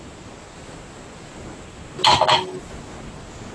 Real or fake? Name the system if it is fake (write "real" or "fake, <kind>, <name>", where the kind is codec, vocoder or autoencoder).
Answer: real